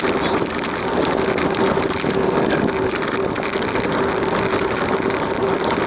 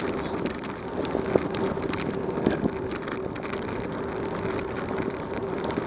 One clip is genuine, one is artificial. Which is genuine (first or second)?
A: first